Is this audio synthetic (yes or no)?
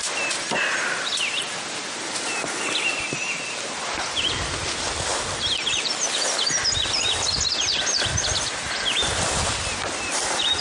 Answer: no